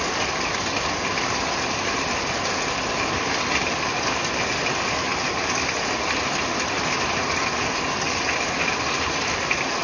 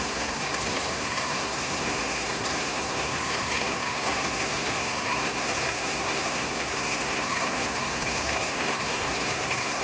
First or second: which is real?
first